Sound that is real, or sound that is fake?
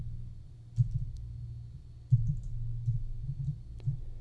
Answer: real